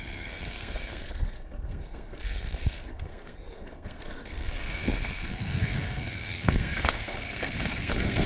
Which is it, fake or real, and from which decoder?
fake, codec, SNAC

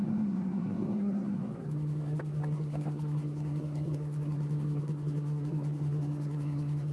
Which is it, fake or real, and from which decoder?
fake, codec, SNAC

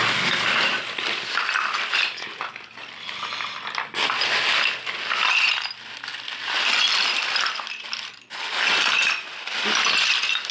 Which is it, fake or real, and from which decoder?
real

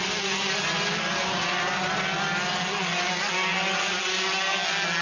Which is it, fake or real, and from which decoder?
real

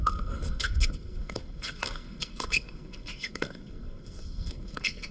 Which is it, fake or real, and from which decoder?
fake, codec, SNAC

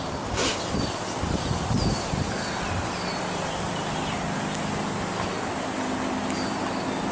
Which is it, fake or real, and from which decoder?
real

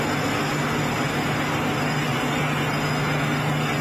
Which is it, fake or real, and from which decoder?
real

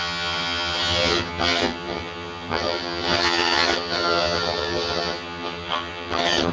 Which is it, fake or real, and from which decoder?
fake, vocoder, HiFi-GAN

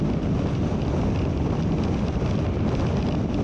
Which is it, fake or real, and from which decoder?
real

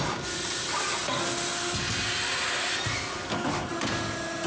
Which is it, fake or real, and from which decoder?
real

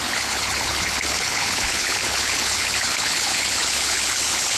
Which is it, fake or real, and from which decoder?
fake, codec, HILCodec